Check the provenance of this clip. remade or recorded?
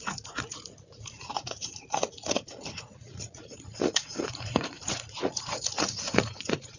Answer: remade